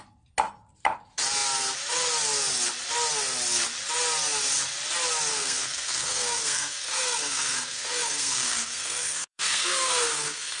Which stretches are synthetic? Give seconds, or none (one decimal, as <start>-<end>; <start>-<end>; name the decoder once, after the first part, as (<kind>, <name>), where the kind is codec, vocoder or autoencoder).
5.3-10.6 (codec, SNAC)